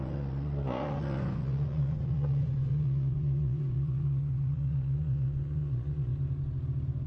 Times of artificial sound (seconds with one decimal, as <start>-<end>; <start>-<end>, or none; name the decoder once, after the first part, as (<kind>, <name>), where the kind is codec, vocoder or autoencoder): 0.0-6.1 (vocoder, Vocos)